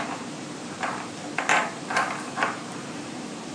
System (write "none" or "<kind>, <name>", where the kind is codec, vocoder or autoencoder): vocoder, BigVGAN v2